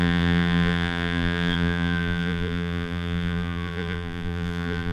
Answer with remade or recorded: remade